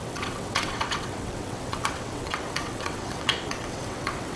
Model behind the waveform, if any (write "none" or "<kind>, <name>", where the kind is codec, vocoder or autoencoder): vocoder, WaveNeXt